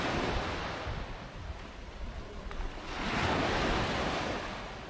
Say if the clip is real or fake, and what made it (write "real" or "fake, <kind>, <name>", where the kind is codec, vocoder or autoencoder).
real